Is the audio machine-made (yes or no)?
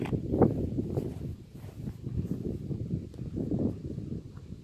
no